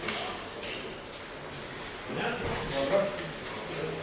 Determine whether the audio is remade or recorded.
recorded